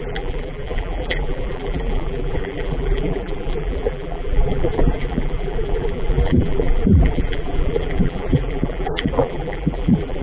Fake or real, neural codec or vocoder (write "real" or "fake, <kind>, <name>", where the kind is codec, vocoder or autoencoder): fake, vocoder, BigVGAN v2